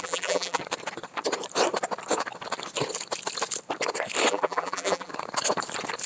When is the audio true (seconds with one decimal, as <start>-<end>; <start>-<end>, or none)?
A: 0.6-4.3; 5.1-6.1